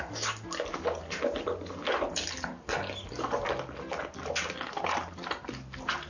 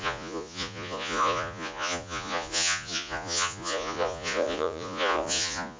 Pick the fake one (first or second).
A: second